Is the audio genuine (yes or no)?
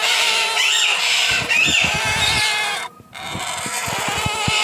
yes